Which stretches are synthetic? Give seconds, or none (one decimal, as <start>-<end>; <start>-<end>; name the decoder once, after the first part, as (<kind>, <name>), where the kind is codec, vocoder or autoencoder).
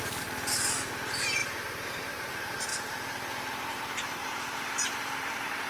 1.4-2.3 (vocoder, BigVGAN v2); 2.7-5.7